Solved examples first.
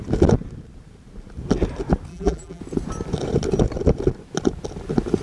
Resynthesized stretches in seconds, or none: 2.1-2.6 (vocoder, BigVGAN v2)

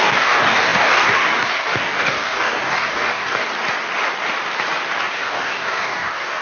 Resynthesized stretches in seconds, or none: 0.0-3.4 (codec, DAC); 5.0-6.4

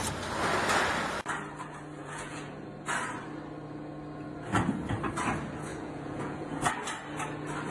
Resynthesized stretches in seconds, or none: 2.0-2.5 (vocoder, Vocos); 5.7-6.7

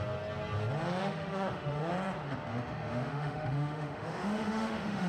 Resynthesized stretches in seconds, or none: 1.0-1.9 (autoencoder, DAC-VAE); 2.5-5.1

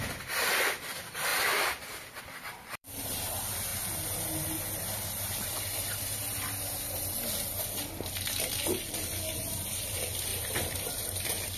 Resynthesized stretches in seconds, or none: 0.0-3.7 (vocoder, BigVGAN v2); 8.9-11.6